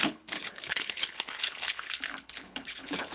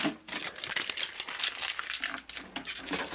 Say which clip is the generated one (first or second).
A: first